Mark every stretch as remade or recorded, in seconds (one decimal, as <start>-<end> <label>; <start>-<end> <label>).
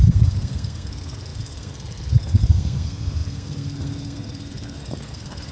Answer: 0.0-5.5 remade